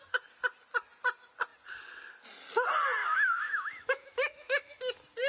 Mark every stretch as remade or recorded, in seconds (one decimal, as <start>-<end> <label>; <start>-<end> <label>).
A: 0.0-3.0 recorded; 3.0-4.8 remade; 4.8-5.3 recorded